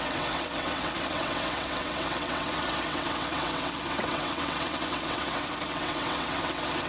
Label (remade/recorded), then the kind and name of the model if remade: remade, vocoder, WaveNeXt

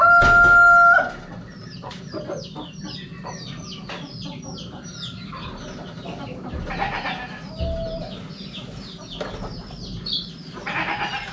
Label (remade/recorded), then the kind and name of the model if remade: recorded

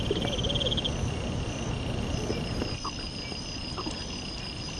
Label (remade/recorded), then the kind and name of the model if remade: recorded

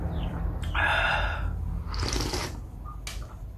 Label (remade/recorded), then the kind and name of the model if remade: recorded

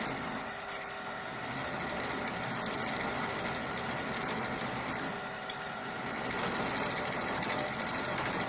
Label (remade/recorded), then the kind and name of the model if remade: recorded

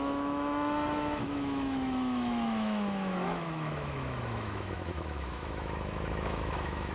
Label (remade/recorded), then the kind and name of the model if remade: remade, autoencoder, DAC-VAE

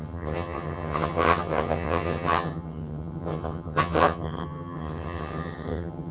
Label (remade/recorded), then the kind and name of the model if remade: remade, vocoder, HiFi-GAN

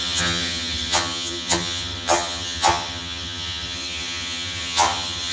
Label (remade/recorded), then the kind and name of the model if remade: remade, vocoder, HiFi-GAN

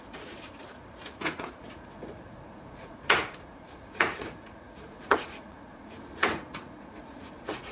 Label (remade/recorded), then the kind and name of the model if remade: remade, vocoder, Vocos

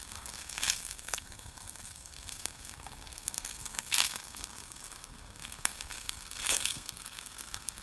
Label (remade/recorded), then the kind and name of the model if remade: remade, codec, SNAC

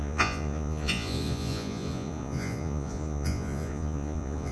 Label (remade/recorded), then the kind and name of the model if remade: remade, vocoder, Vocos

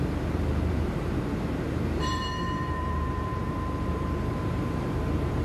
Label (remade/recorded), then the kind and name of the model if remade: remade, vocoder, BigVGAN v2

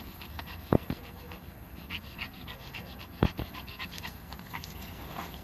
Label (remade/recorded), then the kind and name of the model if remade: remade, codec, SNAC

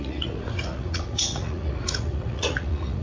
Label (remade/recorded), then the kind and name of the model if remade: remade, vocoder, Vocos